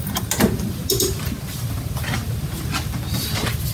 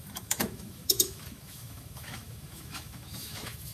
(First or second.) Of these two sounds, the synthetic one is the second